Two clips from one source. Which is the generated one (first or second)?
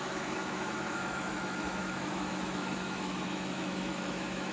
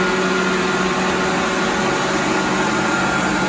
first